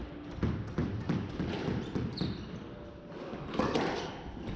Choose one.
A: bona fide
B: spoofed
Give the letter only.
A